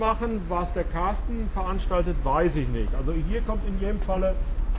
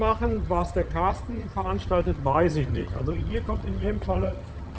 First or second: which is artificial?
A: second